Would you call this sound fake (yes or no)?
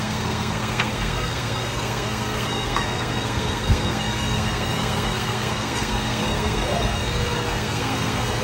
yes